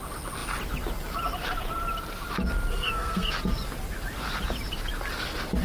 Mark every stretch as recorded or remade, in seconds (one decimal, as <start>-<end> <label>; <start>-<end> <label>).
0.0-2.7 recorded; 2.7-3.3 remade; 3.3-5.6 recorded